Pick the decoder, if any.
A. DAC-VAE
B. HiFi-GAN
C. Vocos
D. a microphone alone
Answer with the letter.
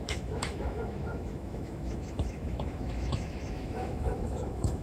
A